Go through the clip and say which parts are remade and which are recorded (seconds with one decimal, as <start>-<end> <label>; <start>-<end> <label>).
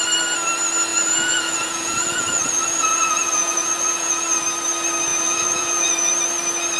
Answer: 0.0-0.9 recorded; 0.9-4.4 remade; 4.4-5.1 recorded; 5.1-6.1 remade; 6.1-6.8 recorded